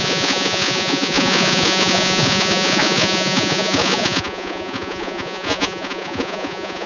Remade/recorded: remade